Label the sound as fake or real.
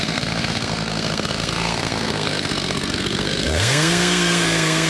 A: fake